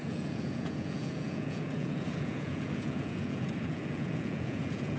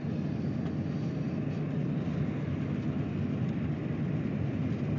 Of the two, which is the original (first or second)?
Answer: second